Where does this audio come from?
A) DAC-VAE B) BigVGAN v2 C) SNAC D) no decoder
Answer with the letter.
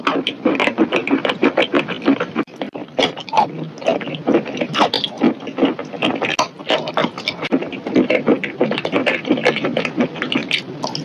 D